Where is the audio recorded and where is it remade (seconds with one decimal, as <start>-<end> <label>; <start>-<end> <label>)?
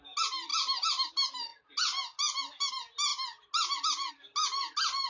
0.0-0.5 recorded; 0.5-1.1 remade; 1.1-5.1 recorded